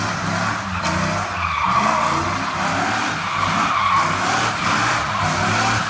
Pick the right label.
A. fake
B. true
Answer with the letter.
B